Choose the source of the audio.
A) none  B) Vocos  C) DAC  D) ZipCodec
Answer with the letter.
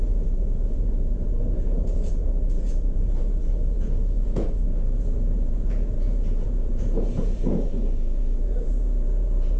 B